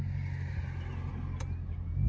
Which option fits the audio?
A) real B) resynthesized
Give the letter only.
A